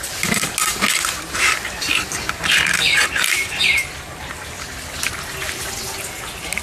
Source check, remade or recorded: recorded